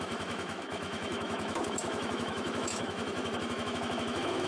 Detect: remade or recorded remade